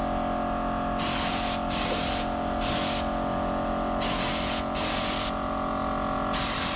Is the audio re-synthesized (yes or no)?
no